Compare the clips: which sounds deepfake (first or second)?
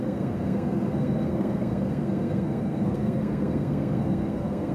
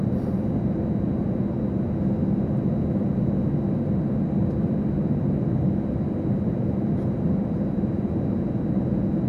first